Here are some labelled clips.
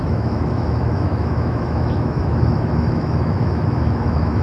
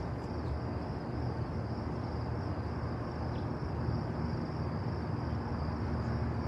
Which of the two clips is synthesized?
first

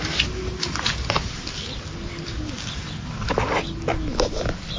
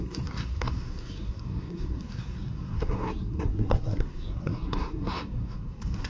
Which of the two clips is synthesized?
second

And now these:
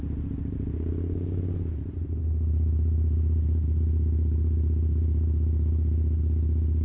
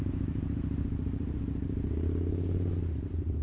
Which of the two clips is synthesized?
second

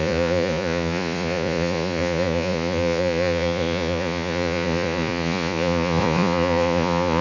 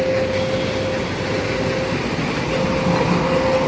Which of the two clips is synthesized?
first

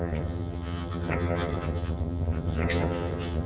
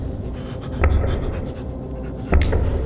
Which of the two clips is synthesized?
first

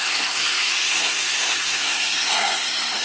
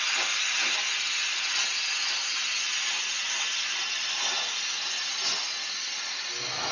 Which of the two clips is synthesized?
first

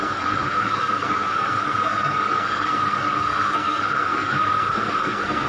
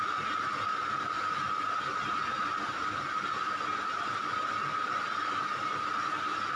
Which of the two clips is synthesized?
first